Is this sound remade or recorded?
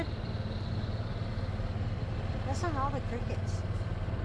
recorded